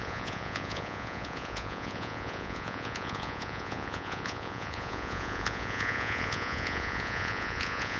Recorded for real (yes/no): no